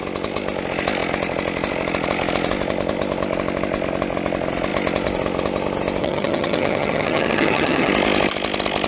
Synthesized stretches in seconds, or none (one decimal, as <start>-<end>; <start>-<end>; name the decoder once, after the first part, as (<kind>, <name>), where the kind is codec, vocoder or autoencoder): 6.0-7.9 (vocoder, HiFi-GAN)